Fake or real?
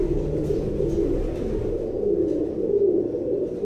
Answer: real